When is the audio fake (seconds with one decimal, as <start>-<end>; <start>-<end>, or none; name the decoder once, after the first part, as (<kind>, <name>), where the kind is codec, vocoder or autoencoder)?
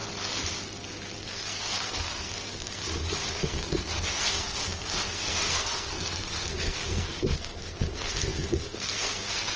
1.2-2.8 (codec, SNAC); 3.3-9.6